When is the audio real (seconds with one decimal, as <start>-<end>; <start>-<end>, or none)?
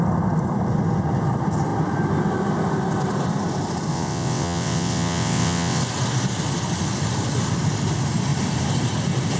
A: 0.0-3.9; 5.8-9.4